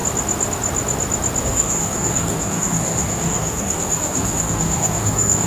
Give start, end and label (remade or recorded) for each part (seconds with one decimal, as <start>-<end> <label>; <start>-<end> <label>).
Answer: 0.0-1.4 recorded; 1.4-5.5 remade